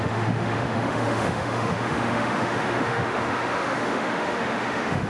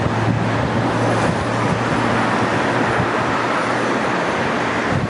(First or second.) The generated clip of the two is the first